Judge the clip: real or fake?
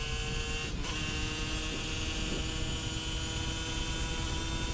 real